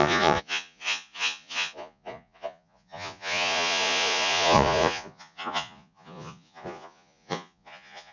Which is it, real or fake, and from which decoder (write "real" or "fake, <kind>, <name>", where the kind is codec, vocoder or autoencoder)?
fake, vocoder, Vocos